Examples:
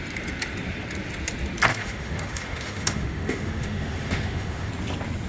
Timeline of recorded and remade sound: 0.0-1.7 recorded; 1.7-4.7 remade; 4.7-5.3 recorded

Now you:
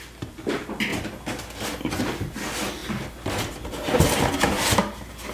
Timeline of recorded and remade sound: 0.0-5.3 recorded

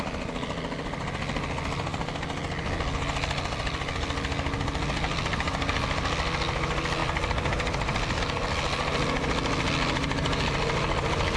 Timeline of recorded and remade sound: 0.0-11.4 recorded

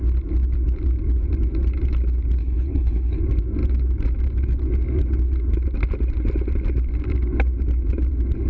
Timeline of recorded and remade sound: 0.0-2.4 recorded; 2.4-3.2 remade; 3.2-8.5 recorded

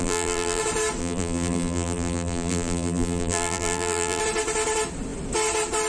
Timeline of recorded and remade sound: 0.0-0.6 remade; 0.6-1.0 recorded; 1.0-4.2 remade; 4.2-5.9 recorded